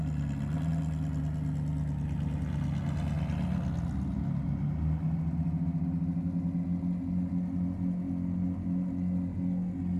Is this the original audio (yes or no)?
yes